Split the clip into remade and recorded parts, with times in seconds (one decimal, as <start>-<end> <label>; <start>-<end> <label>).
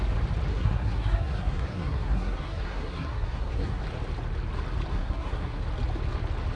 0.0-0.5 recorded; 0.5-3.8 remade; 3.8-4.9 recorded; 4.9-5.6 remade; 5.6-6.6 recorded